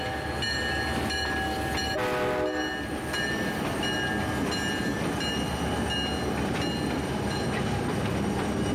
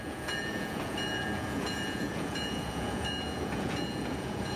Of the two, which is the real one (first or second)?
first